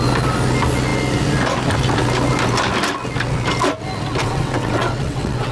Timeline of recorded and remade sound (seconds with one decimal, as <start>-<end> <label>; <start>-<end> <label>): 0.0-4.2 recorded; 4.2-5.5 remade